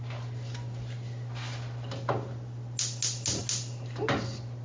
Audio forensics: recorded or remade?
recorded